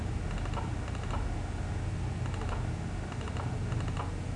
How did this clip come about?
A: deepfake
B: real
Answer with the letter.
B